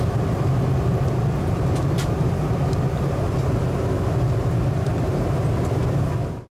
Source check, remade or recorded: recorded